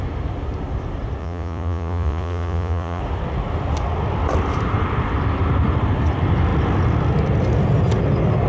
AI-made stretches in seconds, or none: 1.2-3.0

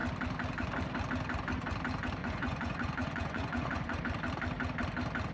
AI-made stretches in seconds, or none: 2.2-4.0

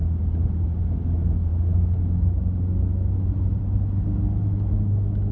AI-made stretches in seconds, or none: none

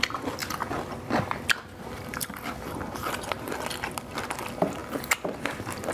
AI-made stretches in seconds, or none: none

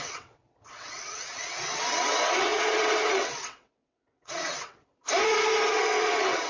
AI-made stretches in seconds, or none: 0.0-4.9; 5.7-6.5